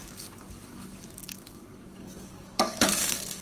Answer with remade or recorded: remade